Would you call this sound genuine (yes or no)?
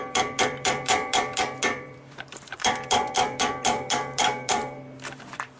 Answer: no